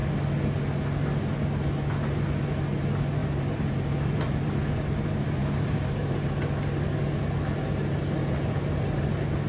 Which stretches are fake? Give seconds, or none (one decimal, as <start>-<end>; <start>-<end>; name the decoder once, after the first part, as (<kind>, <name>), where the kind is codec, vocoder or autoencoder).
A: 3.2-6.3 (vocoder, BigVGAN v2); 8.2-9.0